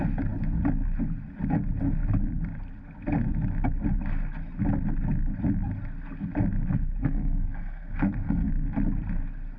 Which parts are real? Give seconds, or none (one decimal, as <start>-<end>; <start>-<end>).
0.0-7.0; 8.5-9.6